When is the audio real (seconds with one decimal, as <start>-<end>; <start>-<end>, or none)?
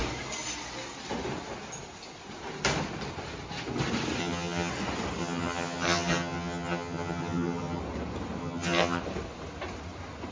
0.0-4.2; 4.7-5.2; 7.8-8.4; 9.0-10.3